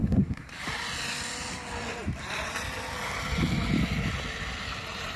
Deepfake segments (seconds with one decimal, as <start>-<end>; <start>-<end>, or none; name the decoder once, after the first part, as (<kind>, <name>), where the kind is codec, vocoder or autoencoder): 0.0-0.5 (codec, SNAC)